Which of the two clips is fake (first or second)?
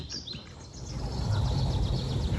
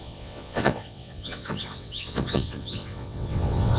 second